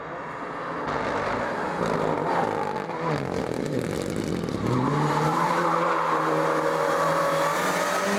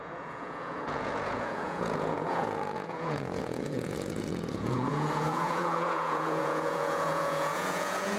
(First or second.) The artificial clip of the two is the second